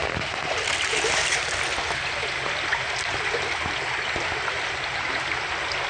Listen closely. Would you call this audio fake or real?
real